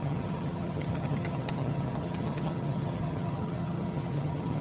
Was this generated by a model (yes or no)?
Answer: yes